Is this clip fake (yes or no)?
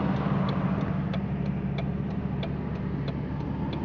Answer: no